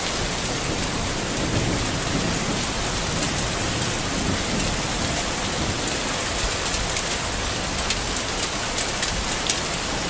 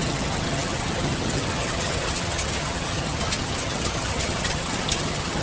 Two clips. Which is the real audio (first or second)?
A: first